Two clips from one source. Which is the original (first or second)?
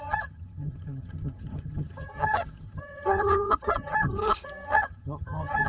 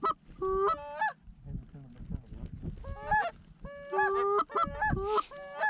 second